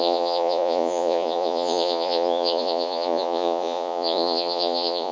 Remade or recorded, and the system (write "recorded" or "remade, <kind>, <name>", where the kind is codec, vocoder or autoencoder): remade, vocoder, Vocos